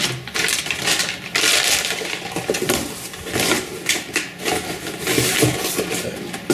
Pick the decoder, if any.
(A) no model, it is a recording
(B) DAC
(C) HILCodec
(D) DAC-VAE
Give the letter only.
A